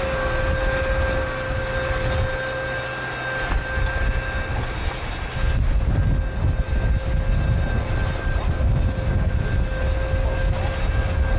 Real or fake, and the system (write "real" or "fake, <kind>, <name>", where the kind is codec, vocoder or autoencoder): real